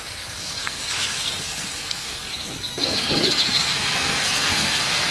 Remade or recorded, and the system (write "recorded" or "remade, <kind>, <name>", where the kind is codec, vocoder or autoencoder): remade, codec, SNAC